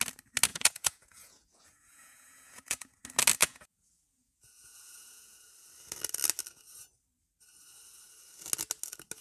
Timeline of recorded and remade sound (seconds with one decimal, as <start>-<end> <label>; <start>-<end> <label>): 0.0-0.5 recorded; 0.5-3.0 remade; 3.0-3.4 recorded; 3.4-5.5 remade; 5.5-9.2 recorded